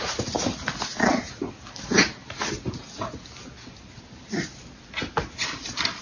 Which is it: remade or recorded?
recorded